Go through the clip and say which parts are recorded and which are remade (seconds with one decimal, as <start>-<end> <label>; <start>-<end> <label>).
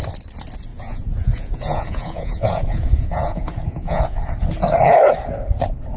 0.0-0.7 recorded; 0.7-4.2 remade; 4.2-6.0 recorded